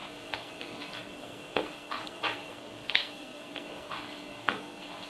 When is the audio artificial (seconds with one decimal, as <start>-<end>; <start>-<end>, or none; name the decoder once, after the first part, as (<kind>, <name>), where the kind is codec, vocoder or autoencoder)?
0.0-5.1 (codec, SNAC)